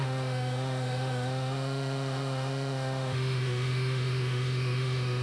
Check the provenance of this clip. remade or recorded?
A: remade